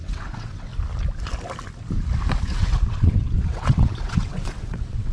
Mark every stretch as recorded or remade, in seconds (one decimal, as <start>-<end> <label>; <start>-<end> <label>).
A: 0.0-0.7 remade; 0.7-2.4 recorded; 2.4-5.1 remade